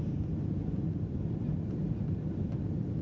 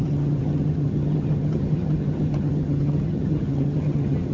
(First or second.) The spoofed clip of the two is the second